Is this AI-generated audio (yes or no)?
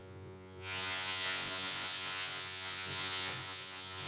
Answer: yes